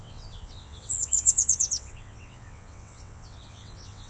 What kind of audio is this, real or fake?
fake